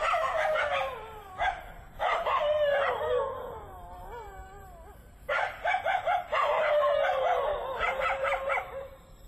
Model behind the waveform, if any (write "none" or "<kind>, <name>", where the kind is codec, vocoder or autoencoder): vocoder, BigVGAN v2